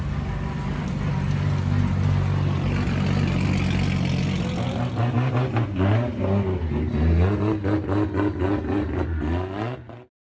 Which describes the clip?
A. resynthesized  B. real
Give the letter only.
B